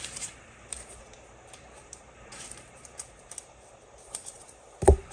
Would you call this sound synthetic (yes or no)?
yes